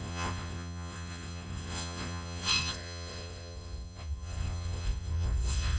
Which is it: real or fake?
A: fake